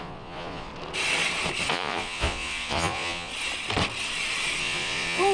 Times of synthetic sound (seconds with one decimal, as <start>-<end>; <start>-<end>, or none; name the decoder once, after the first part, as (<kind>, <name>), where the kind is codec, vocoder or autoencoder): 0.0-0.7 (vocoder, Vocos); 1.7-3.3; 4.6-5.3